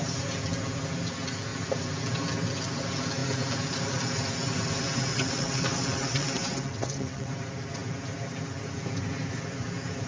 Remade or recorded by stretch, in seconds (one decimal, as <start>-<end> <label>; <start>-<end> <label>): 0.0-5.1 recorded; 5.1-7.3 remade; 7.3-10.1 recorded